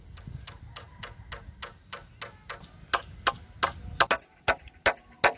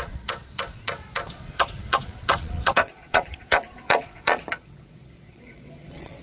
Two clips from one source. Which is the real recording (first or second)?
first